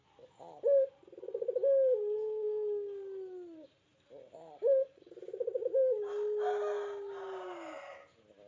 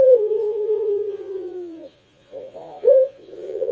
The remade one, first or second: second